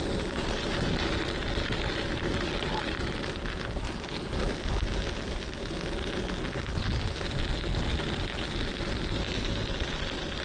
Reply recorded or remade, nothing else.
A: recorded